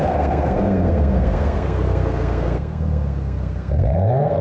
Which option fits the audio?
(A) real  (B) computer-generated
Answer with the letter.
B